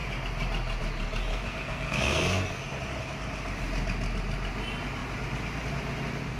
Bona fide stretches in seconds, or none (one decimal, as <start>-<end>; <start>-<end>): 0.0-1.3; 2.6-6.4